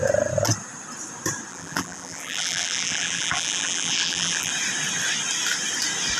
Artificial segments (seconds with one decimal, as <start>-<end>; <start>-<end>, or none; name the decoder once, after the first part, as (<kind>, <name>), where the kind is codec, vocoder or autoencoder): 1.5-4.5 (vocoder, BigVGAN v2)